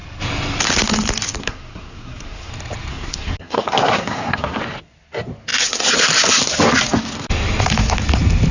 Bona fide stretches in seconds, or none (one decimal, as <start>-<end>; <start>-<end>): 0.0-1.4; 2.5-2.9; 4.6-8.5